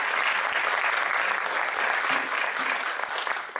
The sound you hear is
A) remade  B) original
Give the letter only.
B